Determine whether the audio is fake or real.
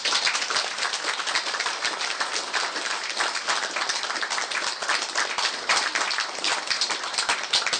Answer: real